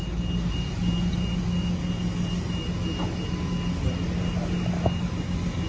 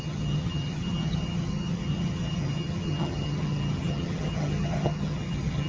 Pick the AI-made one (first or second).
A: second